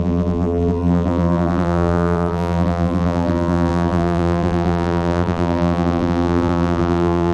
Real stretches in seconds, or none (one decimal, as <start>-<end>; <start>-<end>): none